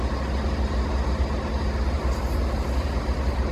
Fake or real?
real